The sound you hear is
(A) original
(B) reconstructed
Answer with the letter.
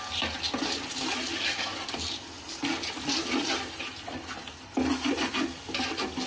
A